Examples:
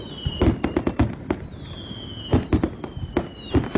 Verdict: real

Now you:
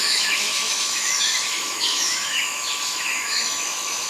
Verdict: fake